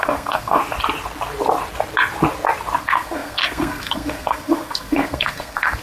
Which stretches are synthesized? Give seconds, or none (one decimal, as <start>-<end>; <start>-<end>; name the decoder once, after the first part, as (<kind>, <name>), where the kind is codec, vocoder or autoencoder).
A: 0.0-0.6 (codec, SNAC); 2.8-5.8